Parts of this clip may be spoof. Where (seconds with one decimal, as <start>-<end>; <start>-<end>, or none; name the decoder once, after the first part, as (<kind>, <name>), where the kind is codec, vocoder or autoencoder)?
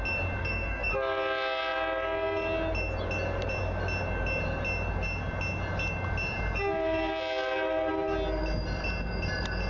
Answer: 0.4-0.9 (codec, SNAC)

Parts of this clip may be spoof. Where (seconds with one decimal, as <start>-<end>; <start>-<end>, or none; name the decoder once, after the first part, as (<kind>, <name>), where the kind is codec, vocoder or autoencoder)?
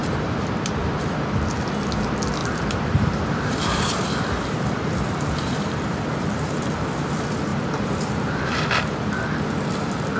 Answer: 0.0-1.0 (vocoder, BigVGAN v2); 2.4-6.2; 7.5-8.7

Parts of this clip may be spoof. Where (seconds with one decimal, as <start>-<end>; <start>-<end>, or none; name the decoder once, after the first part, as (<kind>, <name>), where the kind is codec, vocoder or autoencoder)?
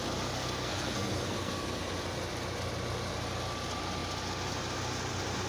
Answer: 0.4-1.8 (codec, SNAC)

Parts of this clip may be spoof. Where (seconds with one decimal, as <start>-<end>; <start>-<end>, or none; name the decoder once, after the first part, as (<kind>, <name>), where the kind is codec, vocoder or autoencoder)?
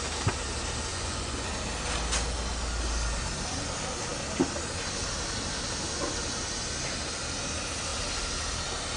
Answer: 0.9-1.5 (vocoder, Vocos)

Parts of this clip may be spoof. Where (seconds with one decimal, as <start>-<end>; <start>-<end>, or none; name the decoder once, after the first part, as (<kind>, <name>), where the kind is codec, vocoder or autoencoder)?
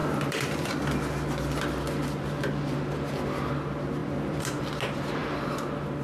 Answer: 0.0-0.7 (vocoder, BigVGAN v2); 4.0-4.6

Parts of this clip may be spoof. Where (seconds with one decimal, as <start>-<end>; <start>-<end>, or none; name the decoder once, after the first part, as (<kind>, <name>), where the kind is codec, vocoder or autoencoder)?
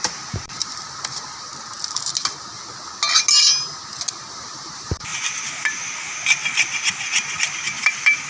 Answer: 0.0-1.5 (vocoder, BigVGAN v2); 4.3-5.1; 7.8-8.3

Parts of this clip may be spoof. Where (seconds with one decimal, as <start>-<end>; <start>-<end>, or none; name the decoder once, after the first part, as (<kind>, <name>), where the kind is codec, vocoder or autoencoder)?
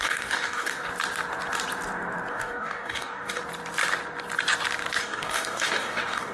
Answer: 0.0-0.9 (codec, DAC); 2.3-3.4; 5.0-6.3